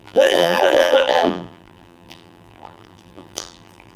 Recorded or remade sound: remade